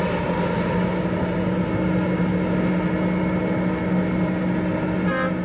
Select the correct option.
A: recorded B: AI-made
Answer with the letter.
A